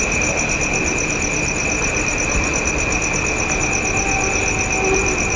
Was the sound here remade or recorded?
recorded